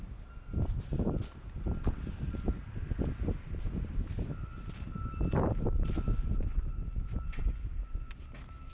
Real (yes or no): yes